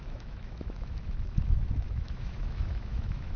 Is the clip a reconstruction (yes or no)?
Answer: yes